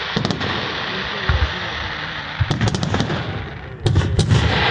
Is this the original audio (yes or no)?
yes